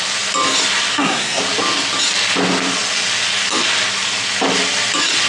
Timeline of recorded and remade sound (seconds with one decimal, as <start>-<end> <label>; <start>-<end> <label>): 0.0-0.9 recorded; 0.9-1.4 remade; 1.4-5.3 recorded